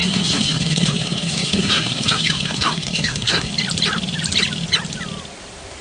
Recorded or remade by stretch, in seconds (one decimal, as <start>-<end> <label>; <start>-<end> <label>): 0.0-3.5 remade; 3.5-5.8 recorded